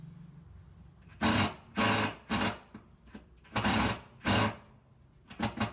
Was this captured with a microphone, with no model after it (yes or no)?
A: yes